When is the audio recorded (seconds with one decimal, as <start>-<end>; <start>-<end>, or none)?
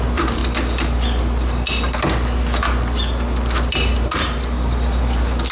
0.4-3.7